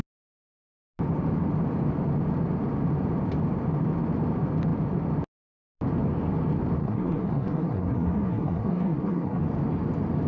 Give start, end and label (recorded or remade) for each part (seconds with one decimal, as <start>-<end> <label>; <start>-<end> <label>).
0.0-6.8 recorded; 6.8-9.4 remade; 9.4-10.3 recorded